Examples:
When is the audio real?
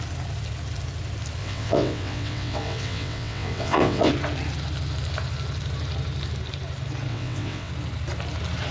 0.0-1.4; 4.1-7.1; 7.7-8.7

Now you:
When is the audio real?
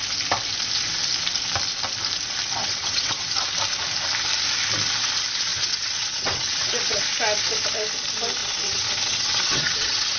0.0-2.6; 3.3-5.5; 7.0-8.4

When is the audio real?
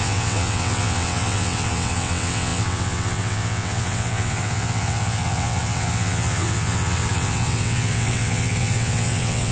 none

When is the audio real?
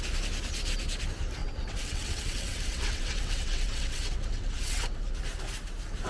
0.0-1.4; 5.1-6.1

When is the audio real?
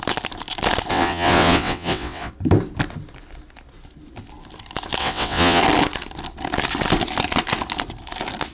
0.0-0.9; 2.3-5.0; 5.6-8.5